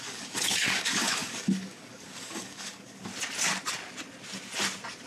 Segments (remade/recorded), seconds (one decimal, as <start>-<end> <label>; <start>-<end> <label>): 0.0-3.1 remade; 3.1-5.1 recorded